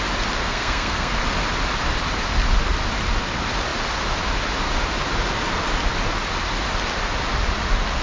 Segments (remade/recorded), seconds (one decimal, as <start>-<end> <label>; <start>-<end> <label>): 0.0-0.4 recorded; 0.4-1.2 remade; 1.2-8.0 recorded

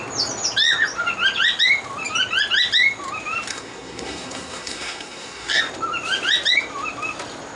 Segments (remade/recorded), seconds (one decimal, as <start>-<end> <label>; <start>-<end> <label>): 0.0-3.5 recorded; 3.5-5.6 remade; 5.6-7.6 recorded

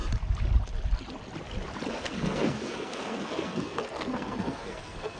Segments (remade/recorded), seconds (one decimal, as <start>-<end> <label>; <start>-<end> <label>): 0.0-1.9 recorded; 1.9-5.2 remade

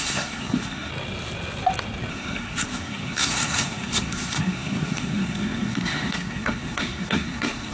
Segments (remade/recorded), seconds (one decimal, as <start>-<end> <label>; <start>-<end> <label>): 0.0-0.9 remade; 0.9-2.1 recorded; 2.1-7.7 remade

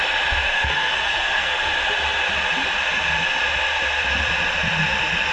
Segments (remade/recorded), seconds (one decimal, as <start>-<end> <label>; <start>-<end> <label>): 0.0-0.4 recorded; 0.4-1.6 remade; 1.6-5.3 recorded